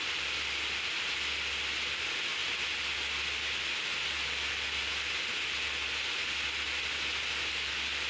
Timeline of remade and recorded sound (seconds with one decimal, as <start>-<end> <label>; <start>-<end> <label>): 0.0-8.1 recorded